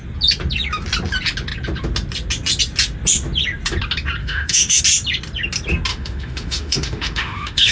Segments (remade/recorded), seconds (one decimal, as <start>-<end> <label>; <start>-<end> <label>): 0.0-4.2 recorded; 4.2-4.8 remade; 4.8-5.9 recorded; 5.9-7.7 remade